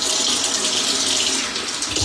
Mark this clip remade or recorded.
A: recorded